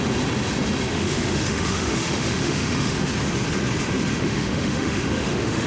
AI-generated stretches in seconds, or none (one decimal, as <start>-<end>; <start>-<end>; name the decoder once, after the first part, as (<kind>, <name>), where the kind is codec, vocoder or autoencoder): 0.9-3.0 (autoencoder, DAC-VAE); 4.1-5.7